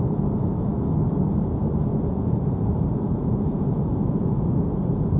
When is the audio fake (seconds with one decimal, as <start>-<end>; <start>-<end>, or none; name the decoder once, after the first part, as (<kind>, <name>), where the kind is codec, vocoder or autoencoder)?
1.9-5.2 (vocoder, Vocos)